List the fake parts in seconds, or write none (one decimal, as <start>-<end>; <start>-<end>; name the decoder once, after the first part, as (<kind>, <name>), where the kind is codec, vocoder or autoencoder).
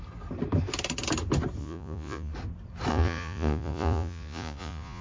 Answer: 1.6-2.3 (vocoder, Vocos); 2.9-5.0